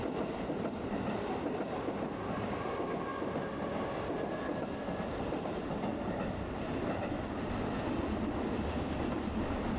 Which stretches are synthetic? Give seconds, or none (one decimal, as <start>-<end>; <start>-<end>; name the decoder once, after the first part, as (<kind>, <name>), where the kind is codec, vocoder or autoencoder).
none